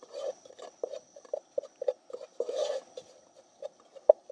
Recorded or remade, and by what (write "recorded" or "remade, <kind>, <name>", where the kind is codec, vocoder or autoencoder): recorded